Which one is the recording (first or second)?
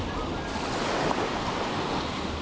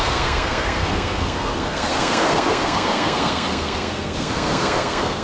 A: first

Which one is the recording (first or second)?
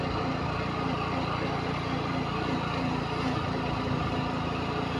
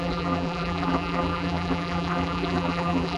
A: first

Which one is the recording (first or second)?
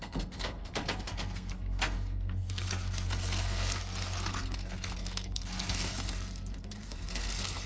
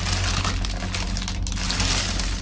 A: second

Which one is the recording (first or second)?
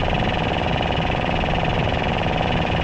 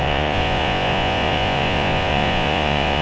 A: first